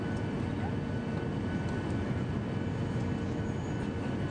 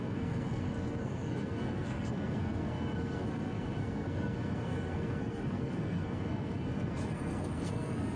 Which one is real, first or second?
first